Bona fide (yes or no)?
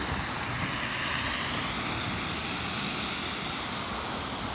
yes